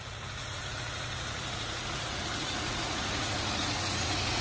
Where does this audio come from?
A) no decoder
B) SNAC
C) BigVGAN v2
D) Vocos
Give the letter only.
D